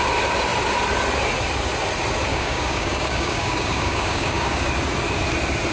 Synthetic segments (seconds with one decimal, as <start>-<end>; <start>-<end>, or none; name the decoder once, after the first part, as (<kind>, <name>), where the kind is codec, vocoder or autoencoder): 2.3-4.7 (codec, DAC)